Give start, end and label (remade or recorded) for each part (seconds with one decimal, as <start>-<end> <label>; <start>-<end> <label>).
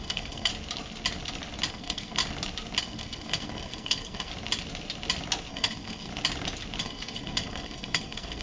0.0-0.5 remade; 0.5-1.7 recorded; 1.7-2.2 remade; 2.2-2.8 recorded; 2.8-4.3 remade; 4.3-5.5 recorded; 5.5-6.1 remade; 6.1-6.8 recorded; 6.8-8.4 remade